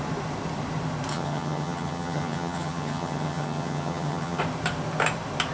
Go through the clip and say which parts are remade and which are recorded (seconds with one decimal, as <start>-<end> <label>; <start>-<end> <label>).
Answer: 0.0-1.1 recorded; 1.1-4.4 remade; 4.4-5.5 recorded